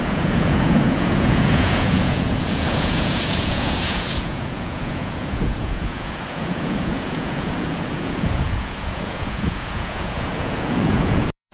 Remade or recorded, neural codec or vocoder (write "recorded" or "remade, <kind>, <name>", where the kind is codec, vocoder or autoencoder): remade, vocoder, Vocos